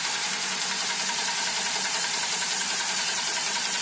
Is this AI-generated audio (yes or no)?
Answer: yes